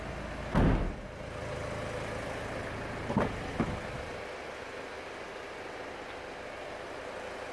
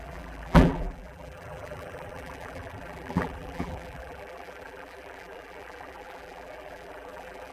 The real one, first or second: first